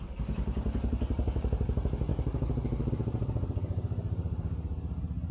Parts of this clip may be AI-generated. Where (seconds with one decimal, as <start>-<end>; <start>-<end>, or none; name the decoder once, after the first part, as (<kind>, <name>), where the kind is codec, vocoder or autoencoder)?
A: 2.1-2.9 (autoencoder, DAC-VAE)